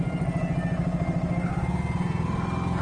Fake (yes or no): no